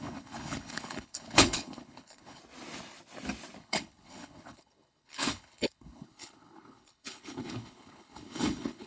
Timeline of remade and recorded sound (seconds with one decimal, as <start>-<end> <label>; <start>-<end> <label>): 0.0-2.4 remade; 2.4-3.6 recorded; 3.6-8.9 remade